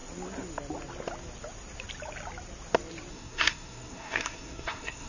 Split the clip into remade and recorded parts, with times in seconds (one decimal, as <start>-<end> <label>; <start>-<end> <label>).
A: 0.0-3.1 recorded; 3.1-5.1 remade